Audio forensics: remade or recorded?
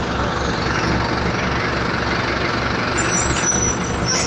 recorded